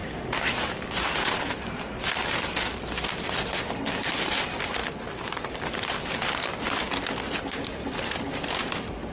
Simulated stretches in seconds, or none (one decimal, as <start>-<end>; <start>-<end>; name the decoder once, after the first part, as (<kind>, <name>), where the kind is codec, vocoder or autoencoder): none